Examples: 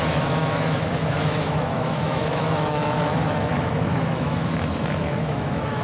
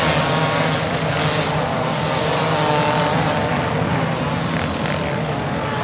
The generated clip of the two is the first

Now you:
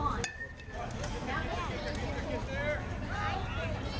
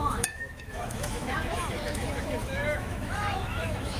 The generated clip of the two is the second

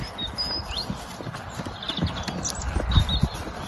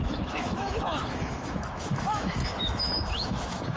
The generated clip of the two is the second